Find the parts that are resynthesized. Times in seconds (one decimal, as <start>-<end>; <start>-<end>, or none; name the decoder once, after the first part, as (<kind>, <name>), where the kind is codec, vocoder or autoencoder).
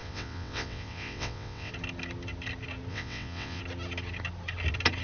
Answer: 0.0-1.7 (vocoder, WaveNeXt); 2.9-3.6